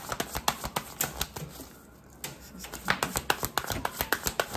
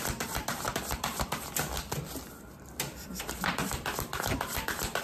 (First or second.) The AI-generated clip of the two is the second